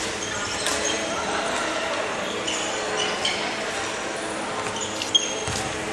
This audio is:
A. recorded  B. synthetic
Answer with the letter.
A